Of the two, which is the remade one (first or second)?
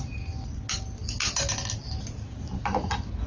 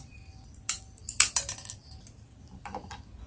second